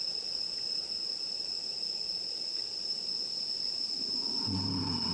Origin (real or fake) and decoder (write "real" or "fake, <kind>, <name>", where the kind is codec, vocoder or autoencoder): real